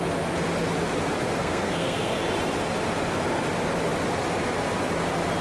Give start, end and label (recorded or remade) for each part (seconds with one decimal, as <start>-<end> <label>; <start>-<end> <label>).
0.0-1.4 recorded; 1.4-2.2 remade; 2.2-5.4 recorded